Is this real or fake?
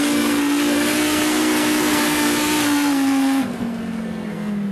fake